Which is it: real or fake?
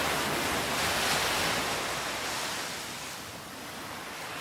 real